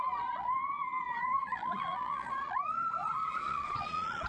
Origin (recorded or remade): remade